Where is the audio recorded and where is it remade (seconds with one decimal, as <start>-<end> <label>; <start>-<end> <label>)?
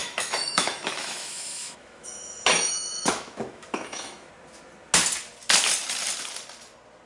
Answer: 0.0-4.3 remade; 4.3-7.1 recorded